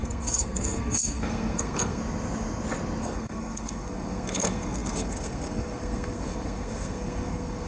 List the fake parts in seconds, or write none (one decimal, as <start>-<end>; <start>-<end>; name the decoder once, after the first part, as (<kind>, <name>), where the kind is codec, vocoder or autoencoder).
0.0-2.0 (codec, SNAC); 3.0-7.7